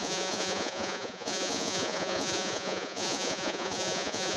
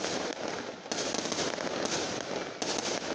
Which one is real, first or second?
second